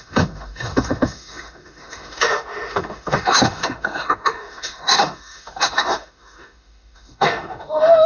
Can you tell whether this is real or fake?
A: fake